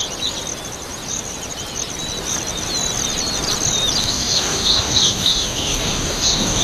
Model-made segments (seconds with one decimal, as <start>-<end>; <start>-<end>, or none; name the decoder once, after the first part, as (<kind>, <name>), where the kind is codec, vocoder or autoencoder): 4.0-6.6 (codec, DAC)